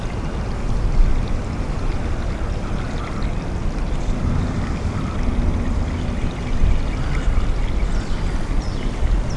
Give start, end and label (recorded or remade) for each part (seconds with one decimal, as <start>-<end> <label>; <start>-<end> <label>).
0.0-9.4 recorded